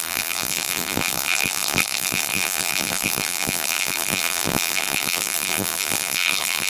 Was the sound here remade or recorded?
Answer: remade